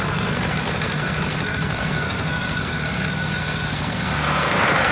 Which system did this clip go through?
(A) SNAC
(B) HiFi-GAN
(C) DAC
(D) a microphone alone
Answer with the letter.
A